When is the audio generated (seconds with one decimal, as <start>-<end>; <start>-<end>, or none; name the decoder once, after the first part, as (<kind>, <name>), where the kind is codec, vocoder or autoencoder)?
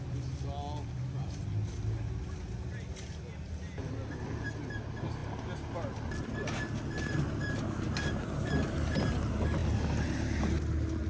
none